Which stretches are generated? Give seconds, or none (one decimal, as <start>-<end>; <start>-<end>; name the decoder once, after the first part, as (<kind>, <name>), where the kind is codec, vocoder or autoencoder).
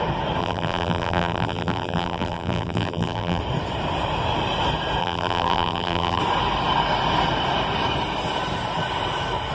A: 0.4-3.4 (vocoder, BigVGAN v2); 5.0-6.2